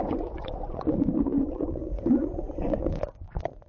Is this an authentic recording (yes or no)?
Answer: no